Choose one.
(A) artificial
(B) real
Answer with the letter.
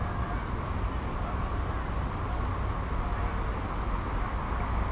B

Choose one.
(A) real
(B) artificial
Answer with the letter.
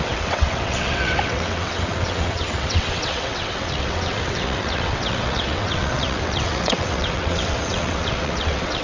B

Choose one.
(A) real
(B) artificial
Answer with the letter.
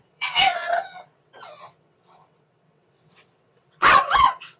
B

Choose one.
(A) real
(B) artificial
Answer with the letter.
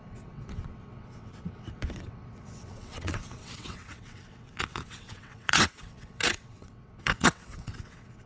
B